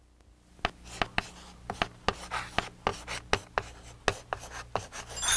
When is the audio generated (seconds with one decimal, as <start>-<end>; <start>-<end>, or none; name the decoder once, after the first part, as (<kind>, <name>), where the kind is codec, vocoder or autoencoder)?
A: none